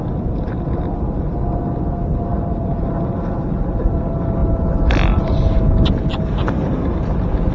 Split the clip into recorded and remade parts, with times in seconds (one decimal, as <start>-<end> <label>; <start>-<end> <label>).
0.0-2.3 recorded; 2.3-3.0 remade; 3.0-7.5 recorded